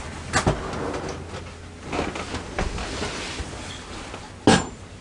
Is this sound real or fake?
real